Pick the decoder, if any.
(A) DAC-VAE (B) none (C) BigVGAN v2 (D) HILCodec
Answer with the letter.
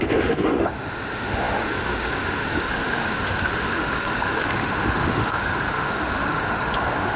A